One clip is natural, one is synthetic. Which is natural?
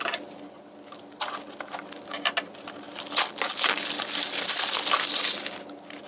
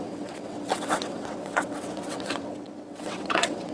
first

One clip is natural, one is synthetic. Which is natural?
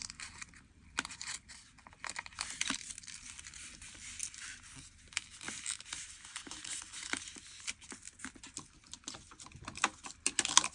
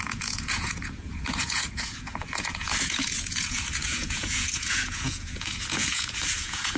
first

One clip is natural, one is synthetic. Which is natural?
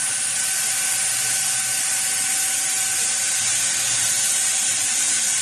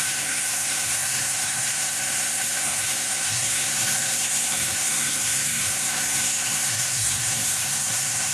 first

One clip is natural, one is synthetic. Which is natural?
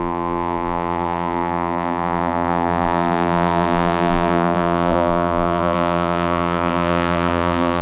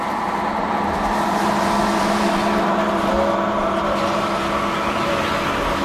second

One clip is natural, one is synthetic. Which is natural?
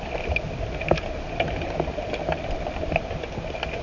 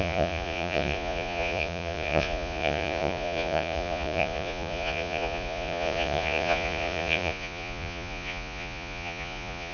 first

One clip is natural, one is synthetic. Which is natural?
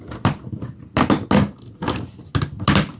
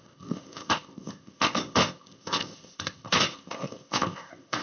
first